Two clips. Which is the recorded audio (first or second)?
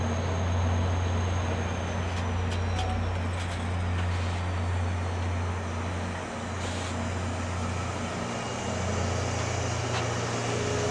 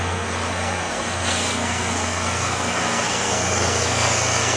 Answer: first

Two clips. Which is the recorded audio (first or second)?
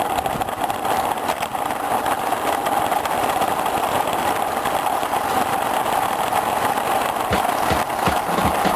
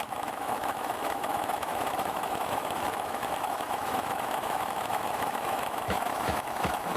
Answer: first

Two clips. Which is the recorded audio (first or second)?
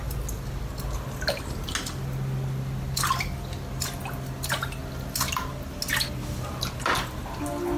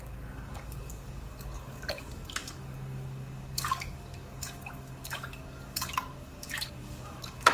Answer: first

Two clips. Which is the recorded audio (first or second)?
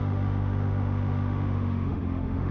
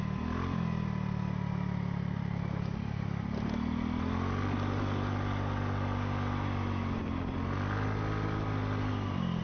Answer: second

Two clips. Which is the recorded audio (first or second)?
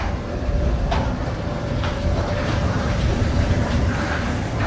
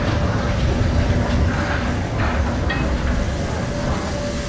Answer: second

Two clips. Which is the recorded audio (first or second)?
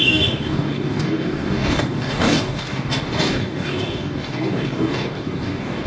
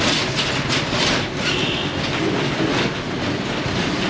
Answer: second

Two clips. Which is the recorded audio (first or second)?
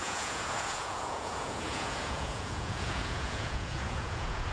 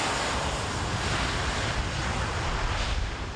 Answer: second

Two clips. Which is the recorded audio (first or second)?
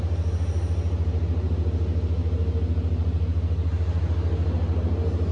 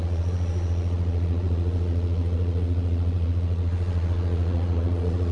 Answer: first